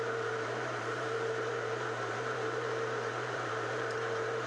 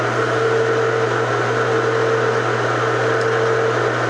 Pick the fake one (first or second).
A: first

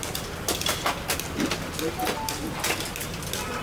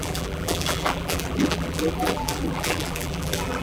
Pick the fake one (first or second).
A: second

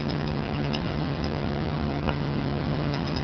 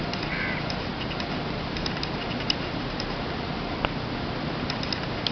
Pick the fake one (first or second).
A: first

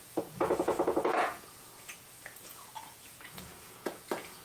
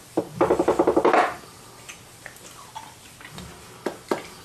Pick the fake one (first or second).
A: first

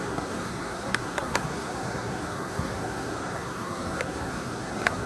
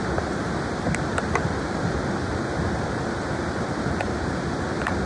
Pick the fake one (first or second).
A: first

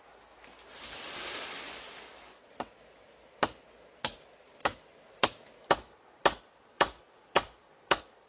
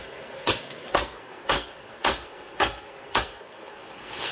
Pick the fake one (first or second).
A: second